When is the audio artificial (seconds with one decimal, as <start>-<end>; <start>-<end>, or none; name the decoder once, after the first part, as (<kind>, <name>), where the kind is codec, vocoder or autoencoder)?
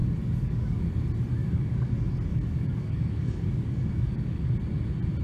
0.0-0.8 (codec, DAC); 1.4-1.9; 2.3-4.5